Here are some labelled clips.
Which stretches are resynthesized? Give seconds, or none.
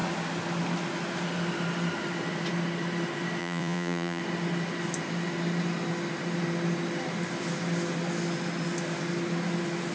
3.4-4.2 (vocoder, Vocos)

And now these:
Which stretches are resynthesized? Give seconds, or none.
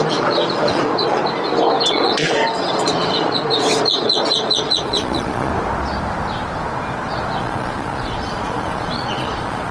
0.0-1.2 (vocoder, Vocos); 1.9-5.5; 7.4-9.7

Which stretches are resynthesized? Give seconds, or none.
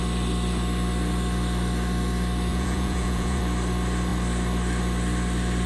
2.5-3.4 (vocoder, Vocos)